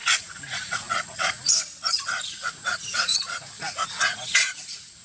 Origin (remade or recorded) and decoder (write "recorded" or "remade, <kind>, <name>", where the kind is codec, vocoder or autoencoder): remade, vocoder, Vocos